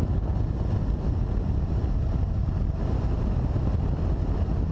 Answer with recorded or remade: recorded